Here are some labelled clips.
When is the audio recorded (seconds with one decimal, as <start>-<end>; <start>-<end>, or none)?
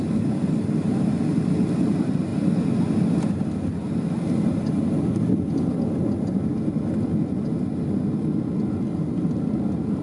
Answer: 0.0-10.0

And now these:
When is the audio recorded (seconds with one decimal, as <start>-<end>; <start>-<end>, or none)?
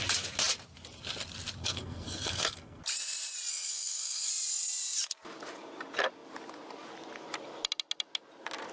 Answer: 0.0-1.6; 2.8-3.5; 4.3-8.7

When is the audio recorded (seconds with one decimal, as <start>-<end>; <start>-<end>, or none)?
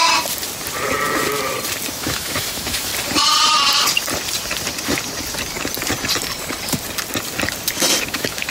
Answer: 0.0-1.9; 2.9-8.0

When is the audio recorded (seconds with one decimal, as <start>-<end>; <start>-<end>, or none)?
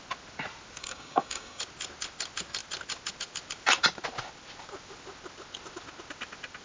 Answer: 0.0-0.8; 1.6-6.6